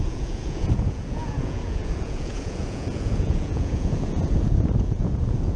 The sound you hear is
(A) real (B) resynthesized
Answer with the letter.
B